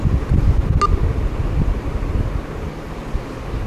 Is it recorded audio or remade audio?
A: recorded